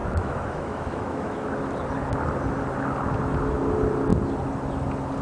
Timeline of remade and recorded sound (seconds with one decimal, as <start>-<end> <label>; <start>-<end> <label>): 0.0-1.5 remade; 1.5-5.2 recorded